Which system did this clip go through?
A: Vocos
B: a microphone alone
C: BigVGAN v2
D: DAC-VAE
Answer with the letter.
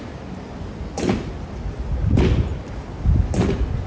B